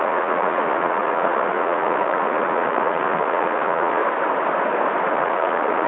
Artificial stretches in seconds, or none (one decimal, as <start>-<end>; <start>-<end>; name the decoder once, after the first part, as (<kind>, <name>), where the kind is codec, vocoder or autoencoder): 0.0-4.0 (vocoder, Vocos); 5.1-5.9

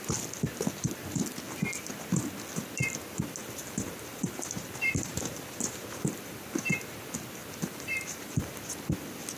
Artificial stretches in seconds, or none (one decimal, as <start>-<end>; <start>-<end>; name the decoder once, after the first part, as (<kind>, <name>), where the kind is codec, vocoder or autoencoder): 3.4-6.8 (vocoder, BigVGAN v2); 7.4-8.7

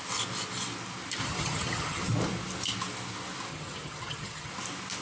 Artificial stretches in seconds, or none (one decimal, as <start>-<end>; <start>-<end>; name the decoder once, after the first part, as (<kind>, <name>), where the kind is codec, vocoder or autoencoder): 1.2-2.1 (vocoder, HiFi-GAN); 3.5-4.5

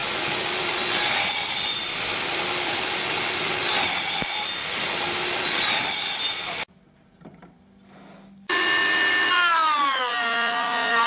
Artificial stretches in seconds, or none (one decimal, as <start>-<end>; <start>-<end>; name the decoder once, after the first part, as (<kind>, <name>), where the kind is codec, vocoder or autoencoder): none

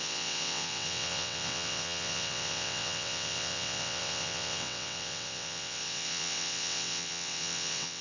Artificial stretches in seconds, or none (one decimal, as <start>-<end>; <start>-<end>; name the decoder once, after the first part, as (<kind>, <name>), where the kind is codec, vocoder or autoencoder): 0.0-8.0 (vocoder, WaveNeXt)

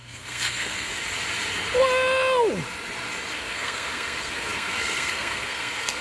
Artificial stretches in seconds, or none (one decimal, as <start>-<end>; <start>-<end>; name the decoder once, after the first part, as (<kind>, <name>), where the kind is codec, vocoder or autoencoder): 0.0-0.9 (codec, SNAC); 3.3-6.0

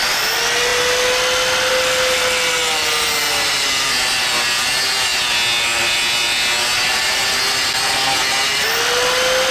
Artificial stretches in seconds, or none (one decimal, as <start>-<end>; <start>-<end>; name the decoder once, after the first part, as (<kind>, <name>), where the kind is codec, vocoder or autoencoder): none